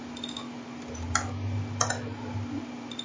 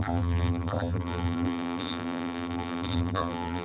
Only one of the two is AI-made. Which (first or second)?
second